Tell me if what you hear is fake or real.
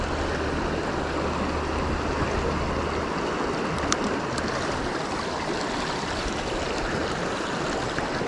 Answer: real